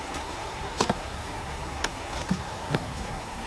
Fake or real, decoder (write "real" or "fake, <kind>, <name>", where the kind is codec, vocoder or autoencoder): fake, codec, SNAC